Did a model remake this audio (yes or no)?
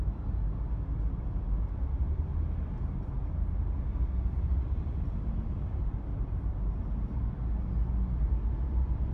no